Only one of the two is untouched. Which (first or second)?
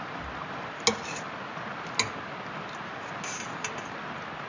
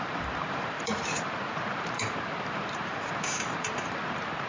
first